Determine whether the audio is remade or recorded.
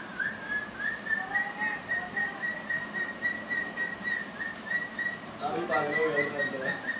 recorded